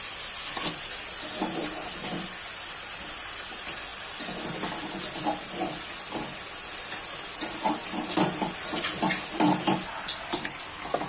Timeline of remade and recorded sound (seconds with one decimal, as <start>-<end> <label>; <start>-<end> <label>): 0.0-11.1 recorded